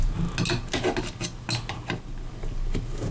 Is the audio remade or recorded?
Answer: recorded